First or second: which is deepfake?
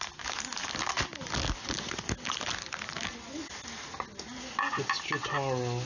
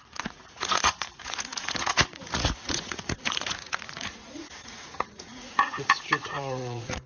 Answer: second